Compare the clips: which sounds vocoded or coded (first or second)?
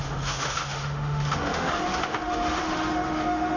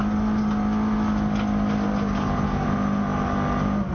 first